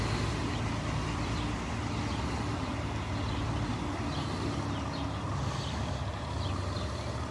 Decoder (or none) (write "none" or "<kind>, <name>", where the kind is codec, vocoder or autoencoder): none